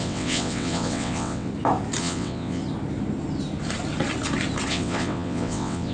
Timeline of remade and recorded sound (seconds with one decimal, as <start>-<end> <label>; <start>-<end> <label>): 0.0-1.5 remade; 1.5-2.0 recorded; 2.0-2.6 remade; 2.6-4.7 recorded; 4.7-5.9 remade